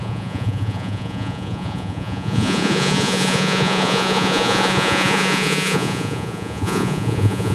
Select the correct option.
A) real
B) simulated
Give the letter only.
B